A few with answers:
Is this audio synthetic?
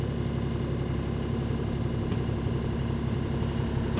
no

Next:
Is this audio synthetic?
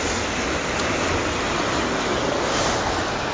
no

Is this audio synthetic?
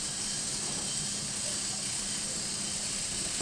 yes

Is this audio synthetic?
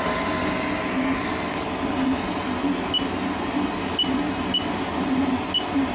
no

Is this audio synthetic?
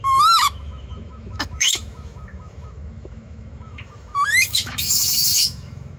yes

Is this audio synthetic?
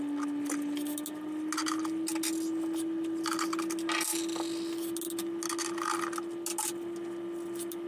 no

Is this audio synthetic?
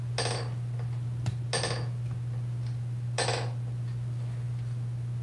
no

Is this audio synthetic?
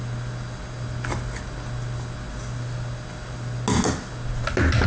no